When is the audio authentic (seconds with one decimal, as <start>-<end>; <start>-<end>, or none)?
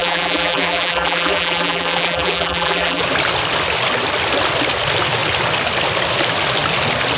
3.0-7.2